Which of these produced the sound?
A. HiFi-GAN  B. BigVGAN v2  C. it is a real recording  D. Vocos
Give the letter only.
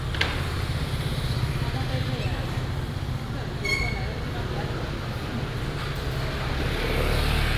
C